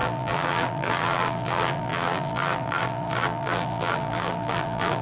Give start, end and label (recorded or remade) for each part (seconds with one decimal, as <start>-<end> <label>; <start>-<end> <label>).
0.0-5.0 remade